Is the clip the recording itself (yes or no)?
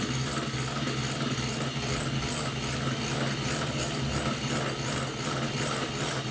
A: yes